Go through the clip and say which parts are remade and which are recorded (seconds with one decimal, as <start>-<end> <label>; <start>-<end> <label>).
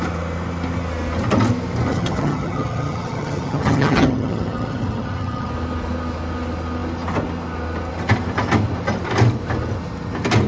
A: 0.0-1.9 recorded; 1.9-5.5 remade; 5.5-10.5 recorded